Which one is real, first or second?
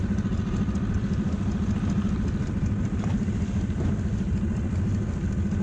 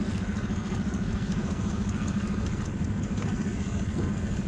first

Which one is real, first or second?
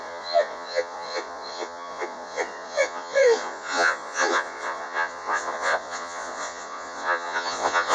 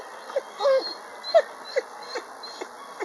second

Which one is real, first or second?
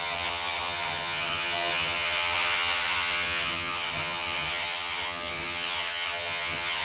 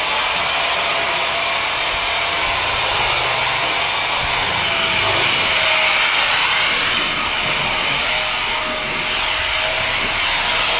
second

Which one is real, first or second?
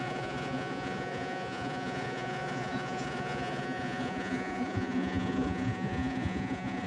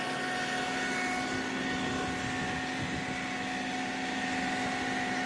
second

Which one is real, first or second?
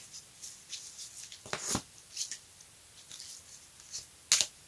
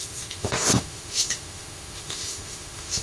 first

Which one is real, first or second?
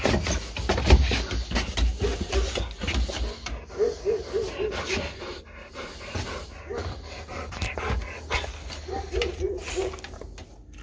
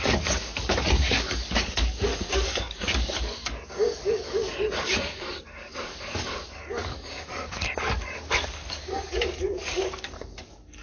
first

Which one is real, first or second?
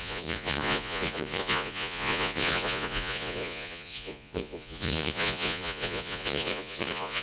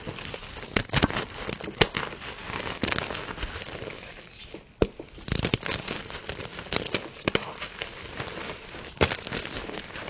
second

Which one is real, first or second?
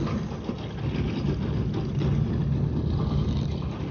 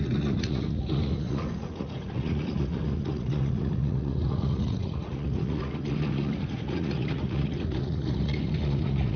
first